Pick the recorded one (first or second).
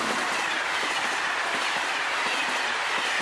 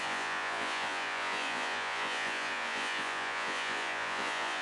first